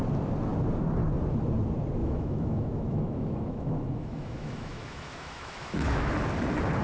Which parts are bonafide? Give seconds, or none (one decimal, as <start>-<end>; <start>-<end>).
0.0-2.0; 6.1-6.8